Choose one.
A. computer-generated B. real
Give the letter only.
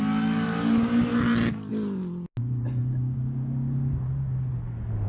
B